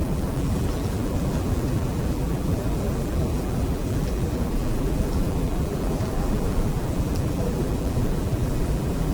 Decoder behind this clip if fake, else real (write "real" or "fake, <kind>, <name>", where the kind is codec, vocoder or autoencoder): fake, vocoder, BigVGAN v2